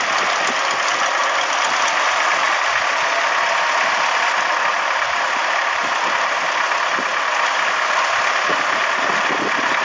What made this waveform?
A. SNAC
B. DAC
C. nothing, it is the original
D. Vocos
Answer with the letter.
C